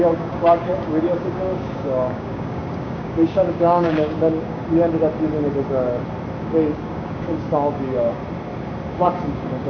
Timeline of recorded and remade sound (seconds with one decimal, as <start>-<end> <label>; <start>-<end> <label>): 0.0-4.6 remade; 4.6-6.4 recorded; 6.4-8.2 remade; 8.2-8.9 recorded; 8.9-9.7 remade